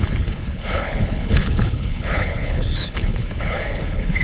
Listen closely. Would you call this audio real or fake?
fake